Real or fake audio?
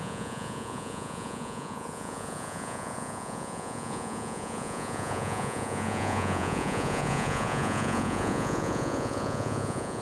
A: fake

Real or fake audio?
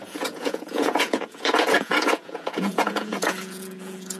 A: fake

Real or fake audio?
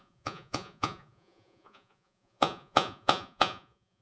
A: fake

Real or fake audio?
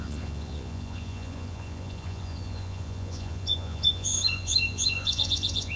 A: fake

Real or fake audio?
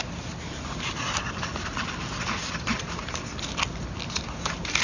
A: real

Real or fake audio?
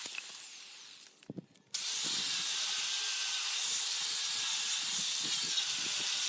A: real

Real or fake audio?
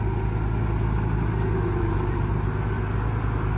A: real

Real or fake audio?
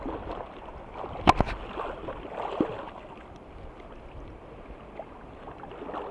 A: real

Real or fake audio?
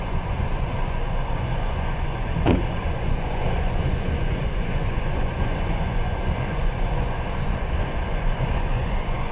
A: fake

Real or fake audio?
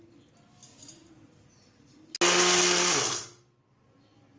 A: real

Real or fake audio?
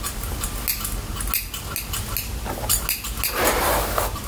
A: real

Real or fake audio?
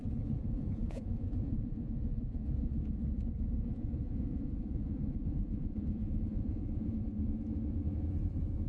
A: fake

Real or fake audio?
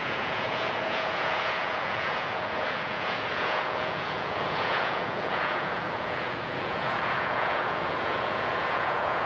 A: fake